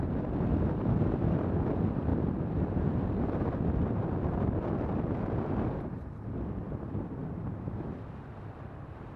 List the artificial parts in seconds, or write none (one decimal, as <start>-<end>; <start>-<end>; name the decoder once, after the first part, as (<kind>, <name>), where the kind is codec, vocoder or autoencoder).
0.0-2.1 (vocoder, BigVGAN v2); 4.3-9.2